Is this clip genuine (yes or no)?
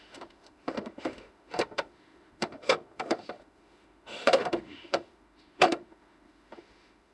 no